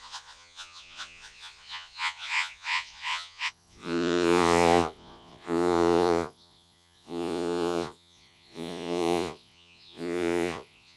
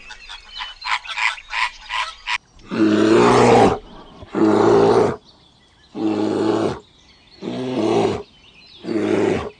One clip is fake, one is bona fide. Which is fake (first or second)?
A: first